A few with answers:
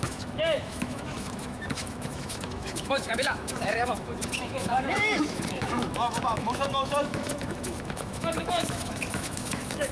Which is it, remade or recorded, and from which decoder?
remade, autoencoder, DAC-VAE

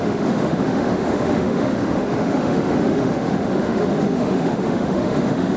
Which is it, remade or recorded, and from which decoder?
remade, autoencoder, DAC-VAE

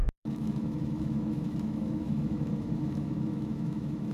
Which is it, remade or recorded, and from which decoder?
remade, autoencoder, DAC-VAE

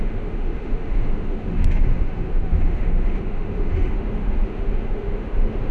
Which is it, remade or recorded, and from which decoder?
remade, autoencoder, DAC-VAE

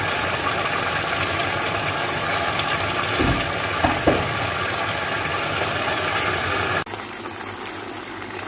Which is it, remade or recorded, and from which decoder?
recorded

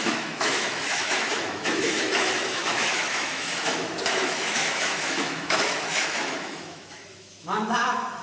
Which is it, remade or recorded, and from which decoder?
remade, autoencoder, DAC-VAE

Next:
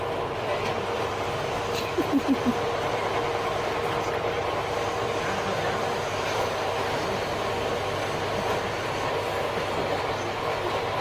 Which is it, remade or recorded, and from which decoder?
recorded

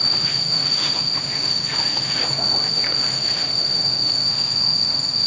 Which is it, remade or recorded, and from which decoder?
remade, autoencoder, DAC-VAE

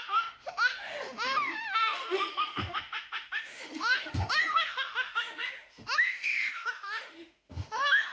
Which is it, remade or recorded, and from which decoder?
remade, autoencoder, DAC-VAE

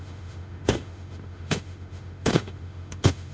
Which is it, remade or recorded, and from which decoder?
remade, autoencoder, DAC-VAE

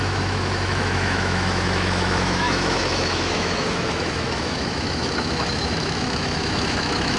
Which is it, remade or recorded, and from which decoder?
remade, autoencoder, DAC-VAE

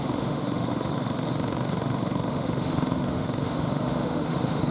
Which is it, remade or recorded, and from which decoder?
remade, autoencoder, DAC-VAE